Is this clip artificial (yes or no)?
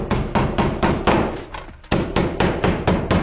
no